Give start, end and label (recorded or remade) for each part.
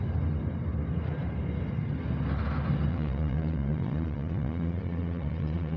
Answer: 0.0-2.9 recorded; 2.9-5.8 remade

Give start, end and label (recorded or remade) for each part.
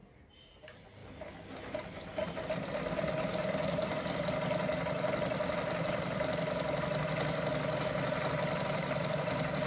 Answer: 0.0-9.7 recorded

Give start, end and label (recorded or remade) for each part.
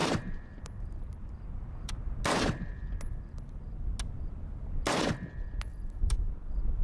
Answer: 0.0-2.1 remade; 2.1-5.7 recorded; 5.7-6.3 remade; 6.3-6.8 recorded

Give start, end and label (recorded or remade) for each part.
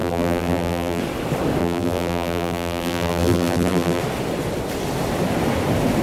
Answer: 0.0-1.0 remade; 1.0-1.6 recorded; 1.6-4.0 remade; 4.0-6.0 recorded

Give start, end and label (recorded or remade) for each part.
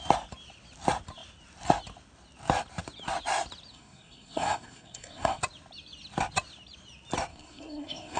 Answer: 0.0-3.7 recorded; 3.7-5.4 remade; 5.4-7.3 recorded; 7.3-8.2 remade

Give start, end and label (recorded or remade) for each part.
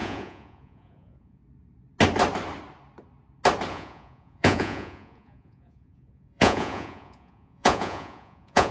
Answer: 0.0-1.4 remade; 1.4-3.7 recorded; 3.7-8.7 remade